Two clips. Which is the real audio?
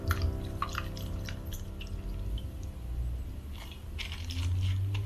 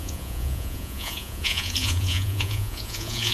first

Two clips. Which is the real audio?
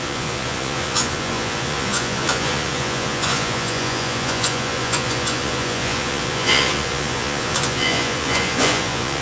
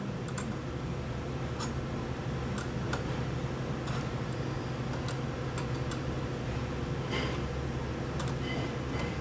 second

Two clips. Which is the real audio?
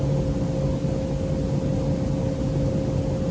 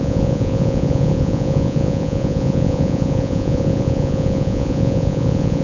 first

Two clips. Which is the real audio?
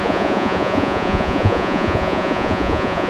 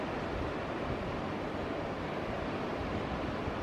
second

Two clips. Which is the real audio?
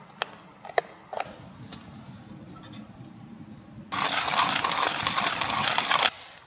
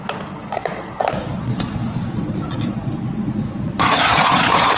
first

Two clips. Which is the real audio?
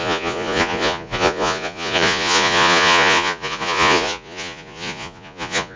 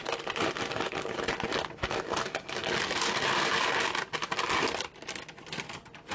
second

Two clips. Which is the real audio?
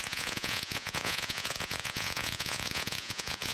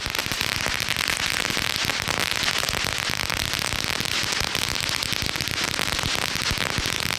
second